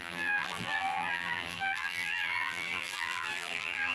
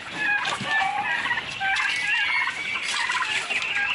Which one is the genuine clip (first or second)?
second